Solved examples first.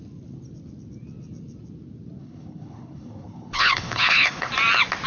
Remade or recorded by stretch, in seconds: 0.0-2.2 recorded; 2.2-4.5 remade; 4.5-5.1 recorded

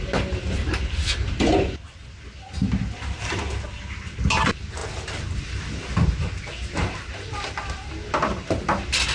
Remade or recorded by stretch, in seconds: 0.0-9.1 recorded

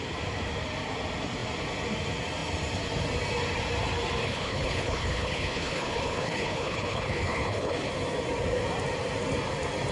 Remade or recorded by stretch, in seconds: 0.0-4.2 recorded; 4.2-7.9 remade; 7.9-9.9 recorded

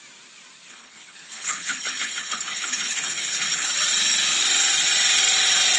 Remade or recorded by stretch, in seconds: 0.0-0.7 recorded; 0.7-3.7 remade; 3.7-5.8 recorded